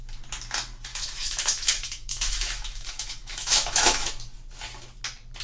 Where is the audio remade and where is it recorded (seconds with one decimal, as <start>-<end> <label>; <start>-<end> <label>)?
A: 0.0-0.9 recorded; 0.9-4.1 remade; 4.1-5.4 recorded